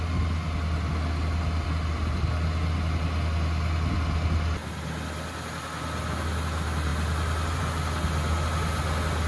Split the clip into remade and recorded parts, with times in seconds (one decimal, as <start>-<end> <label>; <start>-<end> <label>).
0.0-9.3 recorded